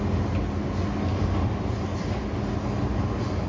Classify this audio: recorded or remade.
recorded